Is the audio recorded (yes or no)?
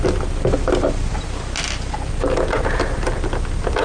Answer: yes